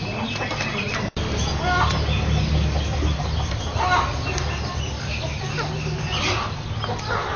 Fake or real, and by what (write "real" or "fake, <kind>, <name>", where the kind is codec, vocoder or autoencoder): real